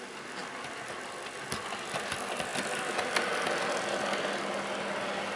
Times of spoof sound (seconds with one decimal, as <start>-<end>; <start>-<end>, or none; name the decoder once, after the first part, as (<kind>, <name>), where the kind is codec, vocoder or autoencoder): none